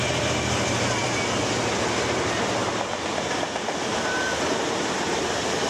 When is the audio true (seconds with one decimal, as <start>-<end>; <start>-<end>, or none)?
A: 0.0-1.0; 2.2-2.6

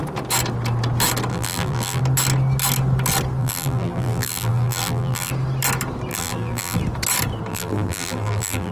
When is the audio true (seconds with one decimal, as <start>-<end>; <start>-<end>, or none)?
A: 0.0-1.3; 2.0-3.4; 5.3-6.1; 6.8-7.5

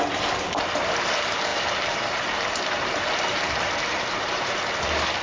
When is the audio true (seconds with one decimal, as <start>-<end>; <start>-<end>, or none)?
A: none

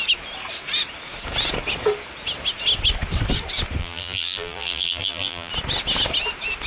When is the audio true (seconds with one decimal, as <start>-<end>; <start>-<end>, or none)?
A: 0.0-3.8; 5.5-6.7

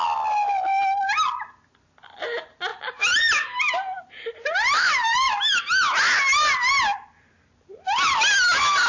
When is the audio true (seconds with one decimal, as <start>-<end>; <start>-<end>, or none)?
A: 0.0-2.7; 5.6-8.9

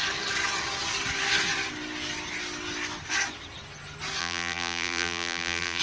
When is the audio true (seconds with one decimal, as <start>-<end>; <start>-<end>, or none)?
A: 0.0-4.2

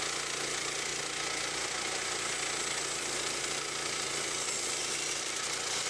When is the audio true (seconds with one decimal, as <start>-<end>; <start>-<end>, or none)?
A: 0.0-4.8

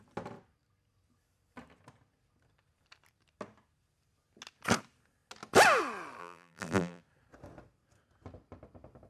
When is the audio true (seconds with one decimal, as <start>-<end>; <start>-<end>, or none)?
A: 0.0-6.2; 7.0-9.1